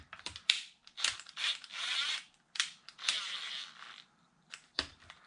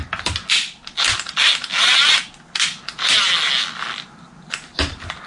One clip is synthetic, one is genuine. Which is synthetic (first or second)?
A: first